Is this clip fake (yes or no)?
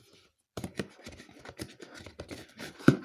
no